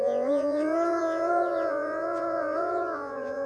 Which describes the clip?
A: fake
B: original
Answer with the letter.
A